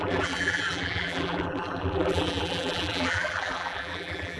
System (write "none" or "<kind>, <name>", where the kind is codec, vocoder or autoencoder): vocoder, BigVGAN v2